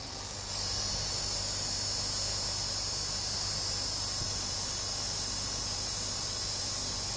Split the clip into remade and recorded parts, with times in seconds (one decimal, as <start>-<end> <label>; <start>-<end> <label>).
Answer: 0.0-7.2 recorded

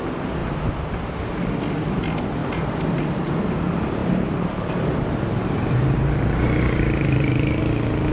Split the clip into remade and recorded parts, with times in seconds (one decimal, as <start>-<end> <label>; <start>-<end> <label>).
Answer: 0.0-2.4 recorded; 2.4-3.4 remade; 3.4-4.0 recorded; 4.0-7.6 remade; 7.6-8.1 recorded

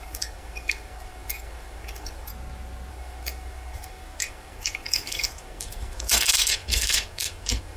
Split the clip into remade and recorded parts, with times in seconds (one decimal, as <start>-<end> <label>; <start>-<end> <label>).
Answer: 0.0-2.3 remade; 2.3-2.9 recorded; 2.9-7.8 remade

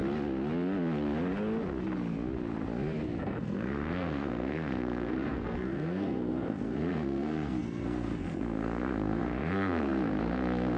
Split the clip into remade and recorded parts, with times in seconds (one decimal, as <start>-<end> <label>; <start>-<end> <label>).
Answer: 0.0-3.2 recorded; 3.2-10.8 remade

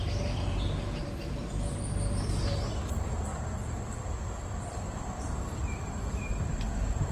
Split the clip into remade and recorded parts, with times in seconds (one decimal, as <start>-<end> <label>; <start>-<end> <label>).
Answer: 0.0-3.3 remade; 3.3-5.1 recorded; 5.1-7.1 remade